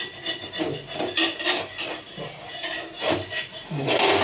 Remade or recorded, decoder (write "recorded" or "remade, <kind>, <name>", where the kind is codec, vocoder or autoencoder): recorded